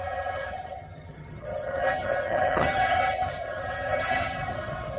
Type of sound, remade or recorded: remade